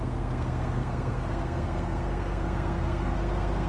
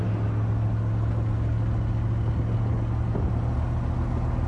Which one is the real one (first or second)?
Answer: second